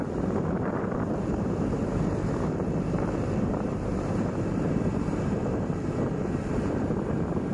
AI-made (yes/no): yes